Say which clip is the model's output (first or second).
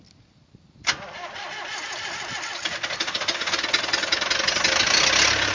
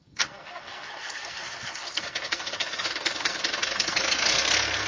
second